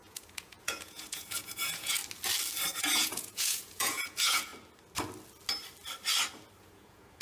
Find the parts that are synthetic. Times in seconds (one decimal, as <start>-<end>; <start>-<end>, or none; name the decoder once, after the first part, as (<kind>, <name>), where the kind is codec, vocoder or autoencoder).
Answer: 0.0-2.0 (vocoder, Vocos); 2.8-4.5; 6.6-7.2